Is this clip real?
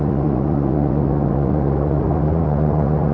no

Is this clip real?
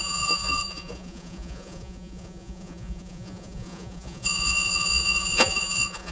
no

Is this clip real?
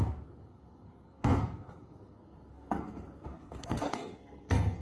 no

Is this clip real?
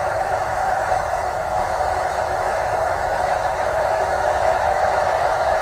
no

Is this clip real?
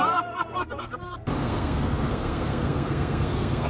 no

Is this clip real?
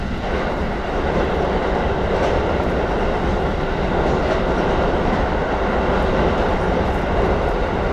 yes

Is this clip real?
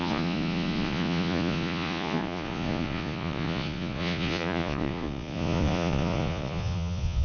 no